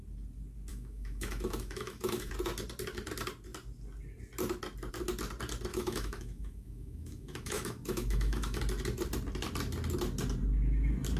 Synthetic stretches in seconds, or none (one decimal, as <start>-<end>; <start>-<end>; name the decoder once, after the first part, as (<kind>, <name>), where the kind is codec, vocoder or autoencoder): 0.7-2.3 (autoencoder, DAC-VAE); 5.7-8.6